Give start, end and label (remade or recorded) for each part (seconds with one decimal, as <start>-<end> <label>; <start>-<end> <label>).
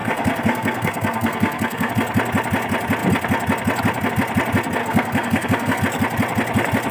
0.0-1.9 remade; 1.9-4.8 recorded; 4.8-5.8 remade; 5.8-6.9 recorded